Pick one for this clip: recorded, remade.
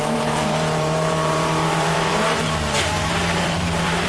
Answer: remade